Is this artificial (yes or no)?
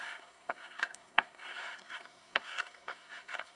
yes